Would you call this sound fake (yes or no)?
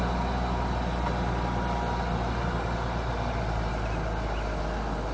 no